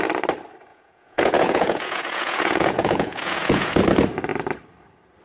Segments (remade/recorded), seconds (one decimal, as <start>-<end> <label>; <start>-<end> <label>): 0.0-0.7 recorded; 0.7-3.8 remade; 3.8-5.2 recorded